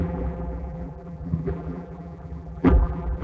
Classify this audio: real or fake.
fake